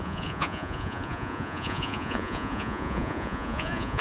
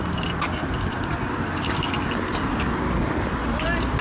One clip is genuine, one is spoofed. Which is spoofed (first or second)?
first